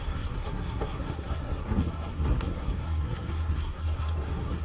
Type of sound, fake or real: fake